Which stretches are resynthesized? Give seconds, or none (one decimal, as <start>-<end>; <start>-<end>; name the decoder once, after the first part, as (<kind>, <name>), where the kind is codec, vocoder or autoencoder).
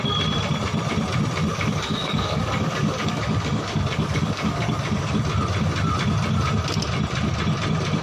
1.5-5.1 (codec, DAC)